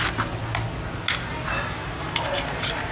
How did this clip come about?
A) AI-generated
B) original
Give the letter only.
B